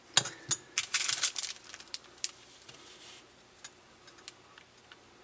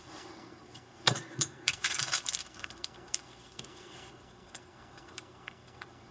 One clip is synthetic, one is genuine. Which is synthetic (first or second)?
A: second